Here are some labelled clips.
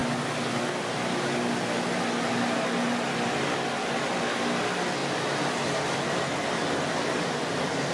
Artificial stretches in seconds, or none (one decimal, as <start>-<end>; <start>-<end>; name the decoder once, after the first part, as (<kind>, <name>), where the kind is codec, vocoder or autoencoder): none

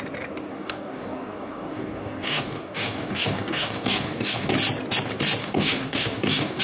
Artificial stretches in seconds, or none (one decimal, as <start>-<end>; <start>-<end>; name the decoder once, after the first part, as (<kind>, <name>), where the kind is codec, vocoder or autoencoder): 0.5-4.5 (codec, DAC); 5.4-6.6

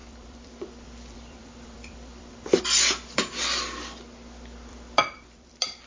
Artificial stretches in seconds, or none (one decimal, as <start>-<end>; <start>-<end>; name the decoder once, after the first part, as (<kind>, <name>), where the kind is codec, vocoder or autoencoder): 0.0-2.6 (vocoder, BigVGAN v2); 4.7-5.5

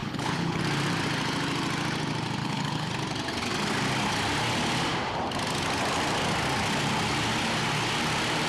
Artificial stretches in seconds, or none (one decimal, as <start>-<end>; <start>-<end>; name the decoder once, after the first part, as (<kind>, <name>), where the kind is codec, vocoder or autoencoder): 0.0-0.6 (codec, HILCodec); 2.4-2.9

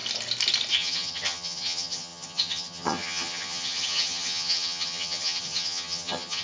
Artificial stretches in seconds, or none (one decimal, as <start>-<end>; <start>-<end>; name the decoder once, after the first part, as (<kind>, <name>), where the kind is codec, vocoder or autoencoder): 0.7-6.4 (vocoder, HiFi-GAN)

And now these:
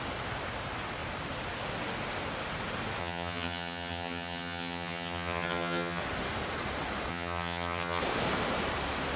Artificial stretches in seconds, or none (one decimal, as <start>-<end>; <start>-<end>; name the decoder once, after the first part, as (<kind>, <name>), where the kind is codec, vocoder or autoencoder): 3.0-6.0 (vocoder, HiFi-GAN); 7.1-8.0